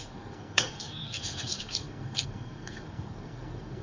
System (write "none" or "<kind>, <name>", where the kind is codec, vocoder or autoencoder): codec, SNAC